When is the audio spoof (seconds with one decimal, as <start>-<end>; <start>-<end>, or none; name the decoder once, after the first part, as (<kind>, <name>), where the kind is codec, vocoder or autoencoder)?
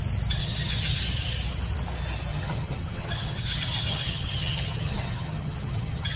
0.4-1.0 (vocoder, HiFi-GAN); 2.3-6.2